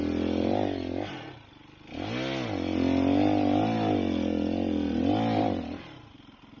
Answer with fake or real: real